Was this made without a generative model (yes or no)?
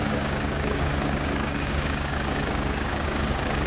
no